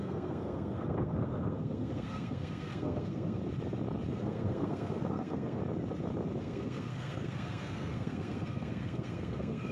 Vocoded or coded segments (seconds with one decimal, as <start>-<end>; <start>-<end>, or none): 0.0-3.4; 4.1-5.6; 6.4-9.7